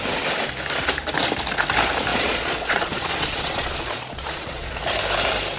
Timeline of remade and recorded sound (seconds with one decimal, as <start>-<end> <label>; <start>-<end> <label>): 0.0-2.1 recorded; 2.1-4.8 remade; 4.8-5.6 recorded